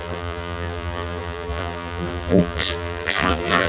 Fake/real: fake